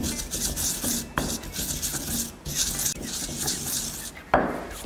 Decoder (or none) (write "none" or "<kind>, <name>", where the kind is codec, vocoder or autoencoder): none